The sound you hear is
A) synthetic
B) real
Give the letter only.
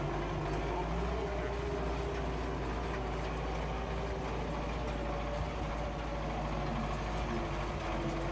B